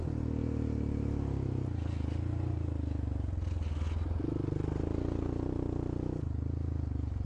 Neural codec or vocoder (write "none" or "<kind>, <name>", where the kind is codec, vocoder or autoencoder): none